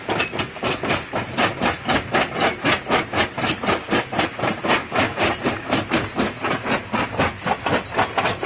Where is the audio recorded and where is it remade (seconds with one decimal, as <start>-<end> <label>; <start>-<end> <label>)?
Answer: 0.0-4.8 recorded; 4.8-5.6 remade; 5.6-8.5 recorded